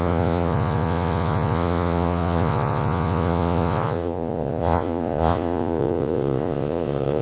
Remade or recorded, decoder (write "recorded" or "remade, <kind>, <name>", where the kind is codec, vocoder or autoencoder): remade, vocoder, Vocos